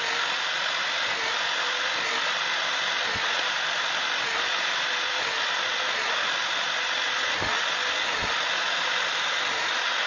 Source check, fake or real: real